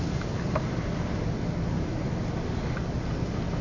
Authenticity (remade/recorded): recorded